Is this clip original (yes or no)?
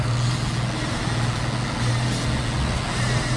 yes